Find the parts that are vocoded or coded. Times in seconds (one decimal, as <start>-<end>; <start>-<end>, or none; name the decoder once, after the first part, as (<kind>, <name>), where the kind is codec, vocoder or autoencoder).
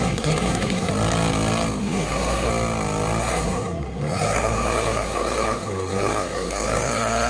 0.0-0.9 (codec, SNAC); 1.8-2.5; 3.2-7.3